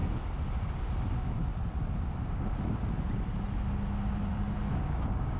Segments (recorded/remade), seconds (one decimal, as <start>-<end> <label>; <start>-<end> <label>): 0.0-1.1 recorded; 1.1-1.5 remade; 1.5-4.7 recorded; 4.7-5.4 remade